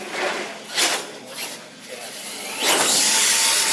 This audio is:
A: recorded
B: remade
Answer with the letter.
A